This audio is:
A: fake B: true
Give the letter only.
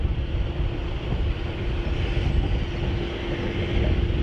B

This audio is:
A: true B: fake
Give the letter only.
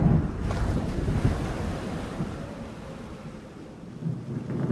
A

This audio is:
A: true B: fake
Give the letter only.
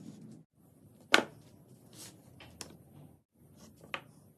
A